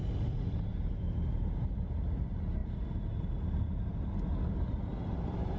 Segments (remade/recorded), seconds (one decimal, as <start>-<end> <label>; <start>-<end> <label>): 0.0-5.6 recorded